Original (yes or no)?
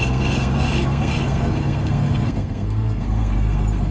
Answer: no